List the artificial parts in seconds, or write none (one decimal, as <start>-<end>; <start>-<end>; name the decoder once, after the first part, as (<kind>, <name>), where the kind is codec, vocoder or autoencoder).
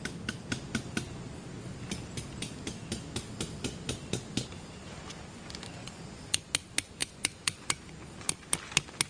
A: 5.8-6.5 (vocoder, Vocos); 7.0-7.9